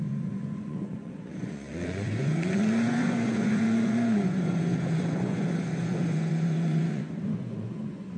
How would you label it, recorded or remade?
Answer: remade